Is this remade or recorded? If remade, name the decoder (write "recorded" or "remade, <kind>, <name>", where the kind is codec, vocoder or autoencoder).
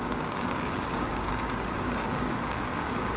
remade, codec, DAC